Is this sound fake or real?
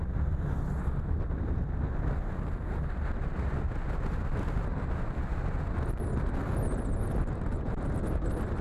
real